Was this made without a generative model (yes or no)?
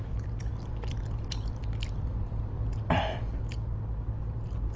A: no